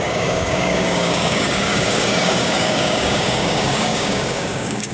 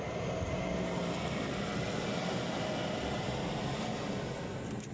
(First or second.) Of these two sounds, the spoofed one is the first